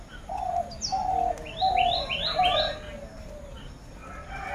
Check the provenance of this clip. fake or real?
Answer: real